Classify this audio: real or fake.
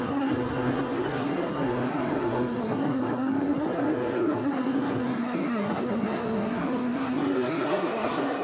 fake